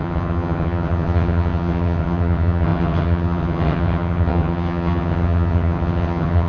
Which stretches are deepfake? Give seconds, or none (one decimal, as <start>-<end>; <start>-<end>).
0.0-6.5